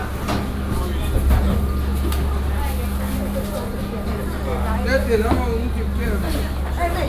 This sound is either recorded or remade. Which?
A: recorded